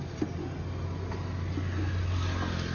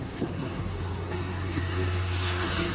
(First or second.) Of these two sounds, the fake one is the second